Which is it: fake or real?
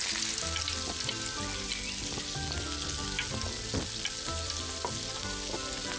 real